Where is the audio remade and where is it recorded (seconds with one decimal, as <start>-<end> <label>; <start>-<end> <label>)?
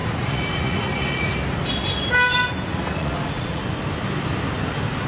0.0-1.3 remade; 1.3-2.7 recorded; 2.7-3.6 remade; 3.6-5.1 recorded